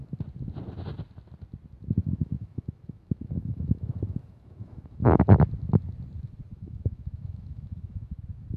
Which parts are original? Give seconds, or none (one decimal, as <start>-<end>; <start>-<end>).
0.0-2.0; 5.2-6.5; 8.2-8.6